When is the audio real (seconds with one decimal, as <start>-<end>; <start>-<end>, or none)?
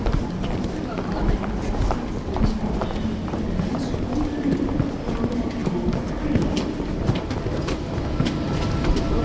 0.0-9.2